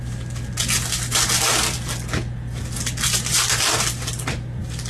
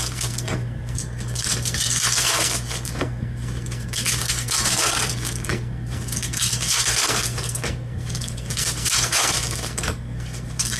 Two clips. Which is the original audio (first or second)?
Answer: first